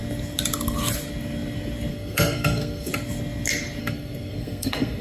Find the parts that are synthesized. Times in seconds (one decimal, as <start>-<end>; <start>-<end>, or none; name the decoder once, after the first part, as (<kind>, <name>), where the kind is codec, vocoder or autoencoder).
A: 1.9-2.9 (codec, SNAC); 3.8-5.0